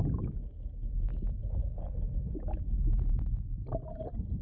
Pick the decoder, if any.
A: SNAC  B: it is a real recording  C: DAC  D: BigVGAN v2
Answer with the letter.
B